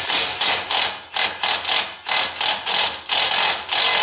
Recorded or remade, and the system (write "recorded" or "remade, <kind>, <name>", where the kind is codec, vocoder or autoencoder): recorded